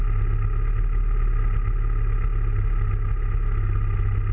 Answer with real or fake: real